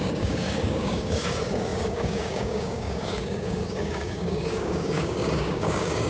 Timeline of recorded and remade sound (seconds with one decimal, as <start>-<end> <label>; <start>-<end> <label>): 0.0-6.1 remade